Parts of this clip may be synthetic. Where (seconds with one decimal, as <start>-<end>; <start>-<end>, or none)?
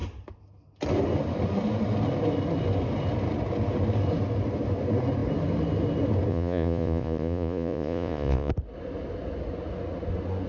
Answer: 6.3-8.5